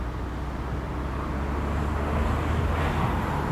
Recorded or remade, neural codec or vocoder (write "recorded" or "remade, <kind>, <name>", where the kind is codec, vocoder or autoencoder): recorded